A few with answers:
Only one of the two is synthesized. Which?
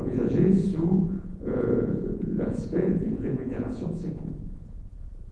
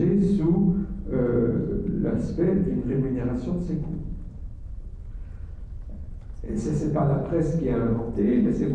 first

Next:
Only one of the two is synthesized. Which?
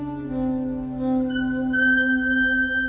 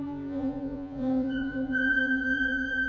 second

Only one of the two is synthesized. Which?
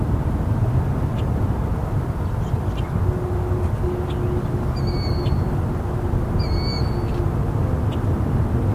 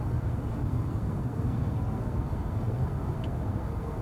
second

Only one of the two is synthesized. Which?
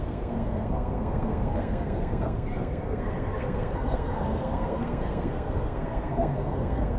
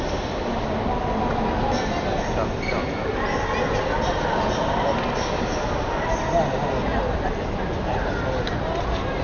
first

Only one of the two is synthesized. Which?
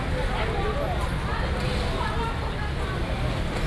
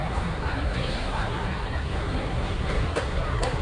second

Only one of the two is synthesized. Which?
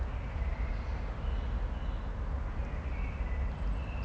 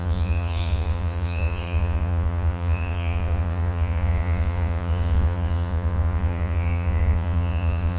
second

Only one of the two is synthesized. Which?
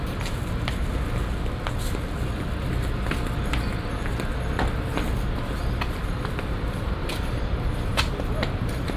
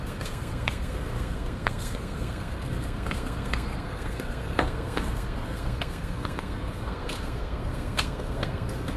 second